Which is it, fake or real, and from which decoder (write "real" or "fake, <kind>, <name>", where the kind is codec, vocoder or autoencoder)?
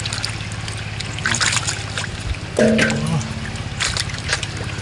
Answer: real